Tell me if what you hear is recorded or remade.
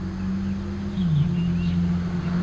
recorded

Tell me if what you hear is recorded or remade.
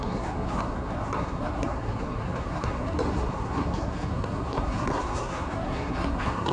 remade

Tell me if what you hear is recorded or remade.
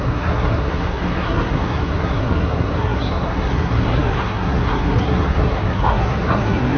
remade